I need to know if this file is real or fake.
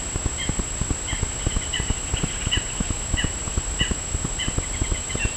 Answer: real